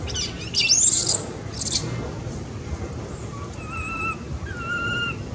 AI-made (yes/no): no